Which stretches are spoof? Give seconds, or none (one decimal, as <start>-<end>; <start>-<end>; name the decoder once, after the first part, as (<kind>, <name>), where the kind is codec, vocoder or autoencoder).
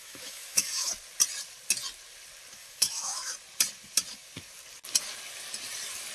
0.0-0.9 (autoencoder, DAC-VAE); 2.6-3.3